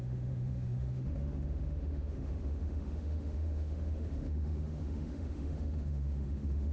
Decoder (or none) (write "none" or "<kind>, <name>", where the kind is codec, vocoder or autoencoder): autoencoder, DAC-VAE